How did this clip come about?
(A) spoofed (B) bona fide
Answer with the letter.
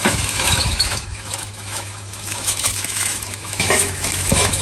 A